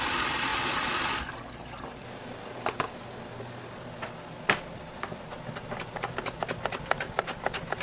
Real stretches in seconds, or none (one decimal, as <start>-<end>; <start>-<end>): 0.0-7.8